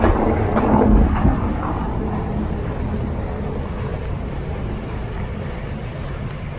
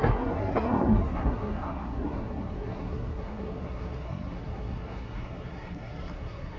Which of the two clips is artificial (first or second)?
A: second